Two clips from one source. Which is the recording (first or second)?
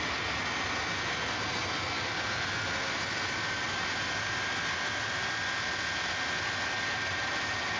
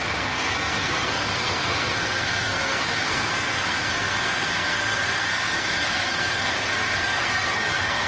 first